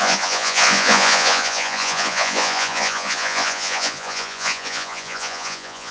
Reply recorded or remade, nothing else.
remade